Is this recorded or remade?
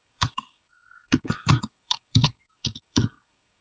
remade